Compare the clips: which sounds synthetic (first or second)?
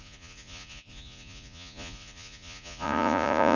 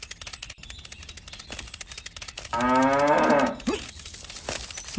first